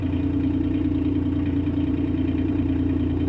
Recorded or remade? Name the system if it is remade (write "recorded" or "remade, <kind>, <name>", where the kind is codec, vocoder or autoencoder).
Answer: remade, vocoder, BigVGAN v2